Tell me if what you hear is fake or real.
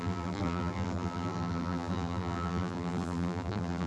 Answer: fake